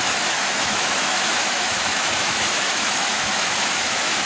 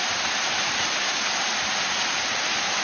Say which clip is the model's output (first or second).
first